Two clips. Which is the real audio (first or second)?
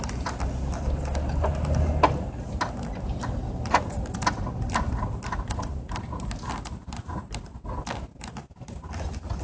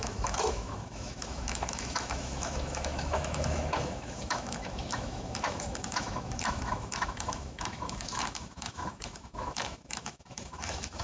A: first